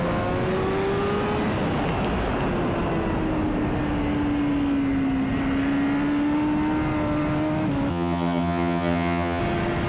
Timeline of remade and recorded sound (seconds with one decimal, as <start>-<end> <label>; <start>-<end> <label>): 0.0-7.9 recorded; 7.9-9.4 remade; 9.4-9.9 recorded